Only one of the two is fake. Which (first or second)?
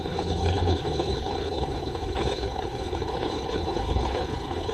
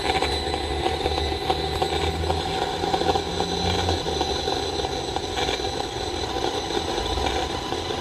first